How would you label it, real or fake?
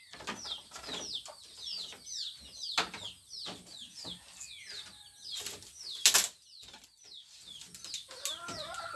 real